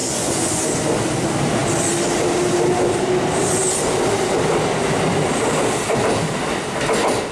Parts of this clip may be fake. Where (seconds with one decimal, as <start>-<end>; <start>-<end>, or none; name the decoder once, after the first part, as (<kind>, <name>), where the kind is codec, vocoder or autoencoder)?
0.0-0.6 (vocoder, Vocos)